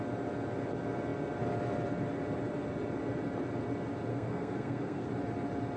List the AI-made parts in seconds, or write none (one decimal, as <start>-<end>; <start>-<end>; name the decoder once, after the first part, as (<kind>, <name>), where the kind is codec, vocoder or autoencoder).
4.1-5.1 (codec, SNAC)